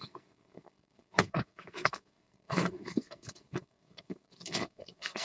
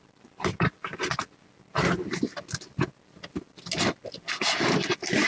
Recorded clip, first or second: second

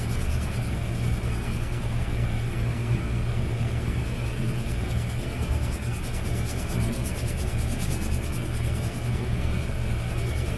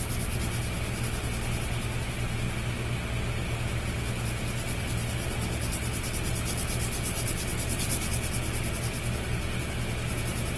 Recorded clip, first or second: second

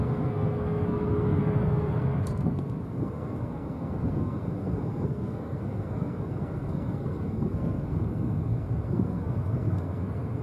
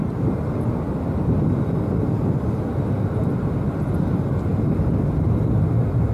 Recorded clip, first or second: second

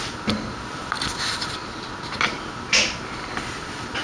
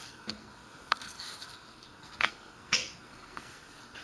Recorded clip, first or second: first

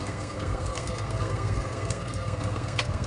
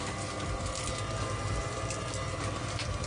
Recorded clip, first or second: second